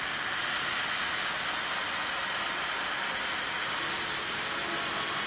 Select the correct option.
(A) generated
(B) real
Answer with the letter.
B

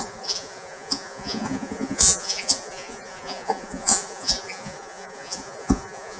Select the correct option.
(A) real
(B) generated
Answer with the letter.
B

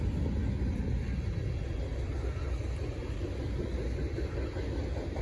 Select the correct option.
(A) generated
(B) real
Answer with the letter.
B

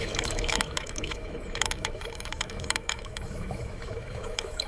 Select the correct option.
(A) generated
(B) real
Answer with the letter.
A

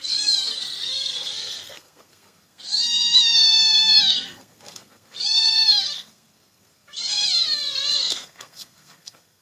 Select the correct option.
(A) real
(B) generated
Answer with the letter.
B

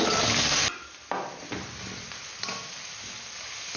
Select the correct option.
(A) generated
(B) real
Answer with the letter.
B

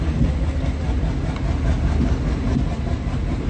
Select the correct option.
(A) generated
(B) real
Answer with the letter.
B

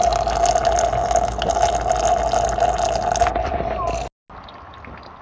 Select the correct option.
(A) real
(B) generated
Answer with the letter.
A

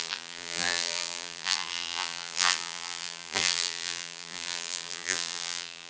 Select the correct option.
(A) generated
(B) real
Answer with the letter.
A